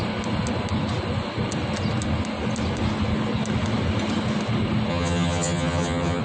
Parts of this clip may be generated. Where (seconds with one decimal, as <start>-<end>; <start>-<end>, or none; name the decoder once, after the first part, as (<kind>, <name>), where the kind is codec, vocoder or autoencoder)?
4.9-6.2 (vocoder, HiFi-GAN)